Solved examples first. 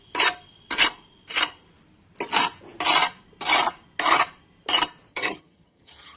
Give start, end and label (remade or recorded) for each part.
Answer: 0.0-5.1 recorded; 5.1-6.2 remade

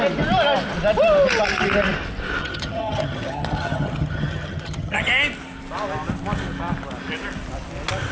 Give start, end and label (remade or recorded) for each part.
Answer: 0.0-2.4 recorded; 2.4-5.1 remade; 5.1-8.1 recorded